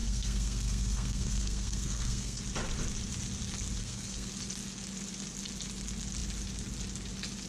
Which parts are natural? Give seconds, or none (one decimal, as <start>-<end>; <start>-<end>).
2.4-3.8; 4.3-7.5